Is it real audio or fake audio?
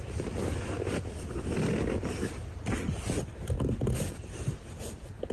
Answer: real